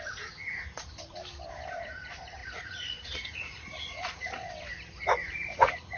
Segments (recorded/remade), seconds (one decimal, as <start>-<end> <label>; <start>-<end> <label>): 0.0-2.4 recorded; 2.4-4.5 remade; 4.5-5.2 recorded; 5.2-6.0 remade